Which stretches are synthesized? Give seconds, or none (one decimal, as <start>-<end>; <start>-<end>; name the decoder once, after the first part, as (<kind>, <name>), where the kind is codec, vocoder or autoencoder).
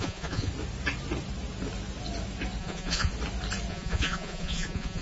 0.0-0.5 (vocoder, Vocos); 2.6-3.1; 3.7-5.0